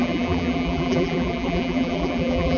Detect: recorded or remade remade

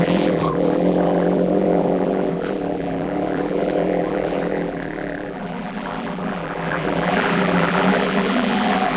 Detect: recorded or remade remade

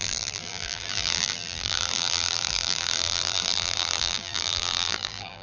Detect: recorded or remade remade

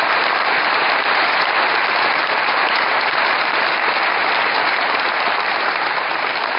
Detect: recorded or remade remade